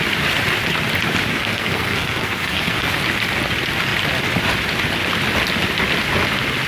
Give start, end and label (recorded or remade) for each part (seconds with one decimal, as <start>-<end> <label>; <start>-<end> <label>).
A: 0.0-1.3 recorded; 1.3-3.0 remade; 3.0-6.7 recorded